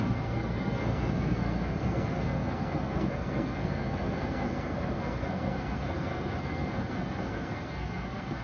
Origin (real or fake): fake